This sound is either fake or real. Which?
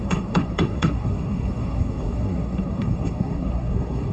fake